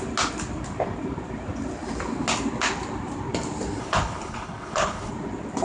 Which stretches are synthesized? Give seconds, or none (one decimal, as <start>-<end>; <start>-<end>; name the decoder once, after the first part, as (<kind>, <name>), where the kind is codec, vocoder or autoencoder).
3.8-5.1 (codec, HILCodec)